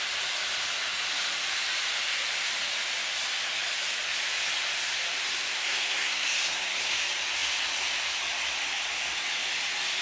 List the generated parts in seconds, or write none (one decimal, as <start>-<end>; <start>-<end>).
5.5-6.9